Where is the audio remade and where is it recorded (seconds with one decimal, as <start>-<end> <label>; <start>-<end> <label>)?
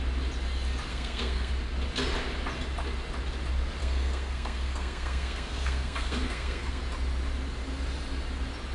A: 0.0-0.9 recorded; 0.9-1.5 remade; 1.5-3.8 recorded; 3.8-6.8 remade; 6.8-8.7 recorded